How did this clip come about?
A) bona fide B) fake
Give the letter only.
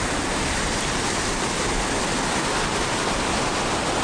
A